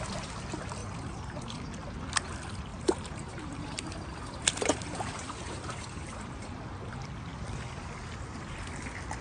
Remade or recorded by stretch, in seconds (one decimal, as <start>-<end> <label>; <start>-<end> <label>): 0.0-0.8 recorded; 0.8-1.4 remade; 1.4-2.7 recorded; 2.7-6.5 remade; 6.5-9.2 recorded